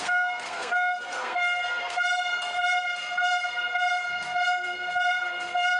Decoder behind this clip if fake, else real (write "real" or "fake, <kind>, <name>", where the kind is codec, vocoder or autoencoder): fake, codec, SNAC